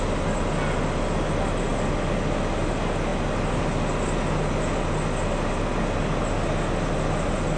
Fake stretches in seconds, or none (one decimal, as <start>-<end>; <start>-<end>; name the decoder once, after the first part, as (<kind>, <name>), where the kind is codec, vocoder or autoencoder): none